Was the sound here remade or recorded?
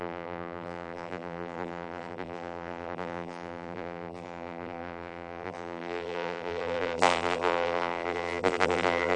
remade